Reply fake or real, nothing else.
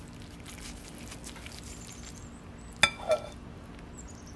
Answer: real